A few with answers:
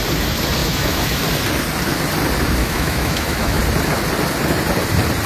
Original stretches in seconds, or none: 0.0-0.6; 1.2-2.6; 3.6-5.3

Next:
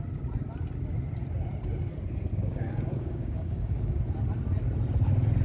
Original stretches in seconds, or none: 0.0-2.3; 4.0-5.4

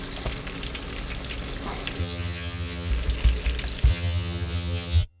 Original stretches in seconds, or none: 0.0-2.0; 2.9-3.9